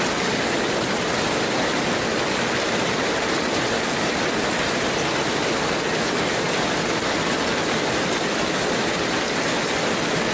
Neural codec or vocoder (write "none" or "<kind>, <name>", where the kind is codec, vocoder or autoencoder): none